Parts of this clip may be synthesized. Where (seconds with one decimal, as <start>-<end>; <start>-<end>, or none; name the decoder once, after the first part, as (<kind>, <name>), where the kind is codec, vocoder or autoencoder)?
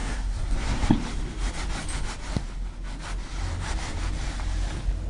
0.0-0.9 (codec, SNAC)